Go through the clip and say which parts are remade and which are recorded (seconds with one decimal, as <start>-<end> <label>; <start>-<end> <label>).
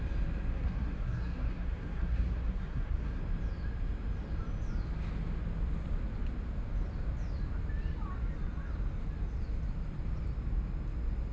0.0-0.5 recorded; 0.5-3.2 remade; 3.2-11.3 recorded